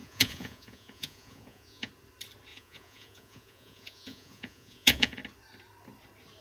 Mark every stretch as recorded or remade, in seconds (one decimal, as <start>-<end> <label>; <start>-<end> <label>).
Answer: 0.0-1.9 remade; 1.9-2.5 recorded; 2.5-5.2 remade; 5.2-6.4 recorded